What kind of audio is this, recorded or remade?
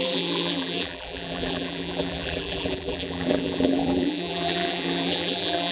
remade